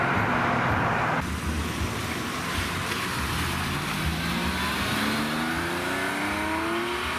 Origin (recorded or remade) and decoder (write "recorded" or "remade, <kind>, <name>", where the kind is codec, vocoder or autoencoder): recorded